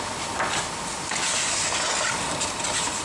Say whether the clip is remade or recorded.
recorded